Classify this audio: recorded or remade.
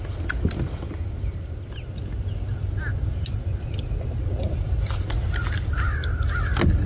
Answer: recorded